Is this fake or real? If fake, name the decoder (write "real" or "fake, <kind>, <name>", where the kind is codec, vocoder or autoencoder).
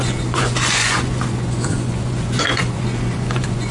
fake, vocoder, Vocos